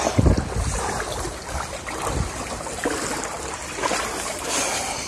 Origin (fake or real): real